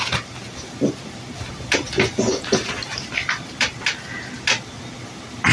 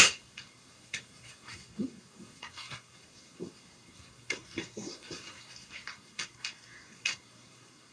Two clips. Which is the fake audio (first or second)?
second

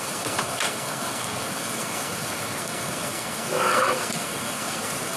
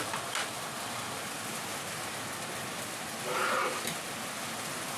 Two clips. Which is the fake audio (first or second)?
first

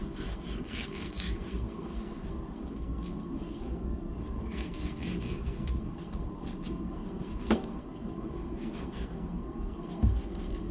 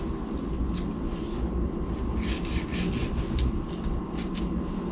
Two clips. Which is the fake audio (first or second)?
first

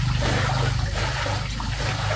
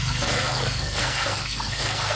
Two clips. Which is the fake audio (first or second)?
second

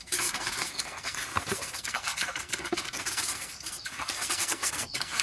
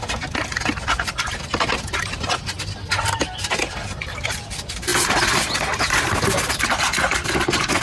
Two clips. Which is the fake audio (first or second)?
first